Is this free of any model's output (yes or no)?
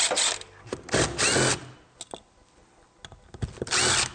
yes